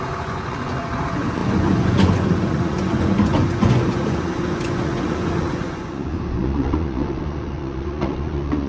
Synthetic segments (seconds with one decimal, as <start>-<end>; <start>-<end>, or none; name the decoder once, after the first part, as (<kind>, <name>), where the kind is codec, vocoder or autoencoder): 0.0-8.7 (vocoder, Vocos)